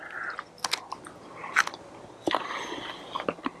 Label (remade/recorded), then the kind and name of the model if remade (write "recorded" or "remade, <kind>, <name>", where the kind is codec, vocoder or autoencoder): recorded